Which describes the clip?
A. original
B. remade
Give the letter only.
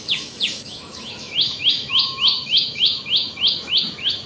B